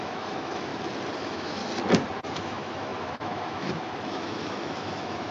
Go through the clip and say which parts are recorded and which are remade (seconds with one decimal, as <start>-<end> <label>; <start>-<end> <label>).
0.0-0.7 remade; 0.7-1.2 recorded; 1.2-1.6 remade; 1.6-2.2 recorded; 2.2-5.3 remade